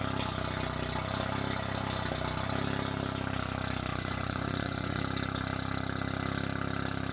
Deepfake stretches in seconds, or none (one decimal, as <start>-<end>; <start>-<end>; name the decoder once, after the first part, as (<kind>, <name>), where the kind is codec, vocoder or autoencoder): 3.9-5.0 (vocoder, Vocos)